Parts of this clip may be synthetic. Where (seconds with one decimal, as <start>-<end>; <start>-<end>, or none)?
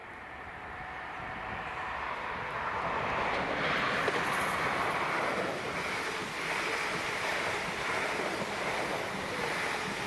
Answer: none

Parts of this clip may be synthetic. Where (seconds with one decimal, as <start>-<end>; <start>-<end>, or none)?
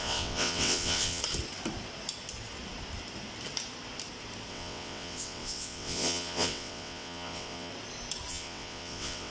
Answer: 0.0-1.2; 4.5-7.7; 8.3-9.3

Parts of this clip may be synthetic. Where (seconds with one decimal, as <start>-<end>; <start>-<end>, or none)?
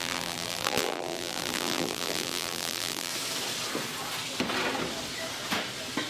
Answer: 0.0-3.1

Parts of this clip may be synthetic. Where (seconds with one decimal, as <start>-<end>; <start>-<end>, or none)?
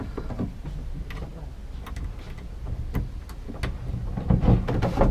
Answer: none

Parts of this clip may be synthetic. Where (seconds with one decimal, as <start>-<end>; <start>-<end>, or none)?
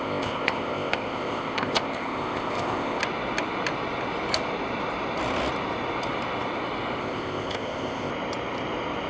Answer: 0.0-3.0; 7.0-8.1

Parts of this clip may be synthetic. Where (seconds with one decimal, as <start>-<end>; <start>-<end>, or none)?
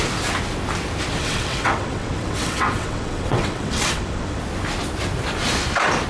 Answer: 1.2-4.4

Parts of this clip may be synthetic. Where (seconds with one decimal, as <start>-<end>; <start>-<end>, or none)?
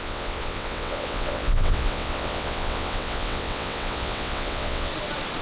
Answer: 0.0-4.9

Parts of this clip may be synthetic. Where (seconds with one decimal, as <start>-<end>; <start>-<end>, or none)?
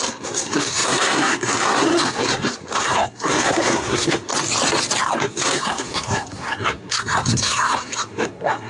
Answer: 0.0-4.3; 5.2-8.7